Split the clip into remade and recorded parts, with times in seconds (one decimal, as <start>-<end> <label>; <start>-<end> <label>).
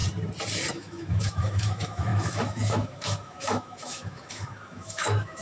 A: 0.0-0.7 recorded; 0.7-5.4 remade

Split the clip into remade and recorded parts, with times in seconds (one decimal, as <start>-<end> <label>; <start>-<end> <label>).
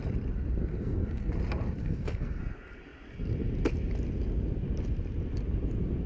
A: 0.0-0.7 recorded; 0.7-1.3 remade; 1.3-1.8 recorded; 1.8-2.4 remade; 2.4-6.1 recorded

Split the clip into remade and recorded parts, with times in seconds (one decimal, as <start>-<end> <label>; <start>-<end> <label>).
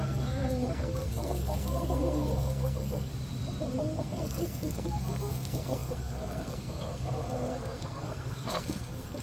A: 0.0-3.1 remade; 3.1-3.8 recorded; 3.8-9.2 remade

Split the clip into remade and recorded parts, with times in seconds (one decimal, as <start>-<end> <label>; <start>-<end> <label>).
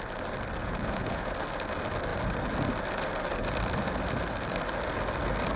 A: 0.0-0.6 recorded; 0.6-1.3 remade; 1.3-5.6 recorded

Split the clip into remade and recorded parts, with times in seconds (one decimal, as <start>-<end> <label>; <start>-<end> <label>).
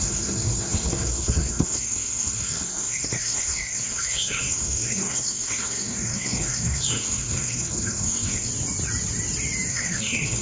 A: 0.0-8.5 remade; 8.5-9.7 recorded; 9.7-10.4 remade